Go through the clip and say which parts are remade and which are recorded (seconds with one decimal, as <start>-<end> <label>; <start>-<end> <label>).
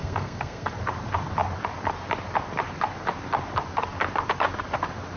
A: 0.0-0.7 remade; 0.7-5.2 recorded